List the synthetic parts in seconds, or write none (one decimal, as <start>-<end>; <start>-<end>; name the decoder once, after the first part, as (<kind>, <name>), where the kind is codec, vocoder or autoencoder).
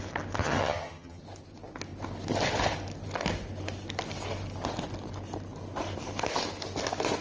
0.4-1.2 (vocoder, HiFi-GAN)